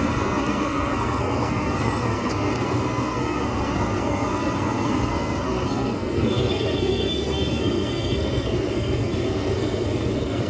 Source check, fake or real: fake